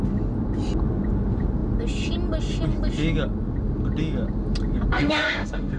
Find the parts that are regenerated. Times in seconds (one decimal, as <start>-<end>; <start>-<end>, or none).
4.9-5.8

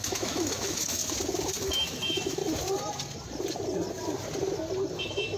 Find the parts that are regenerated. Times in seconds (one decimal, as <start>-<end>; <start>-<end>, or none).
0.0-1.0; 1.6-2.4; 4.9-5.4

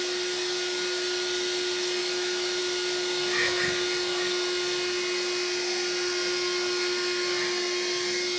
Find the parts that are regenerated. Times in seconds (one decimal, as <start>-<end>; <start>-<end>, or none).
2.0-2.6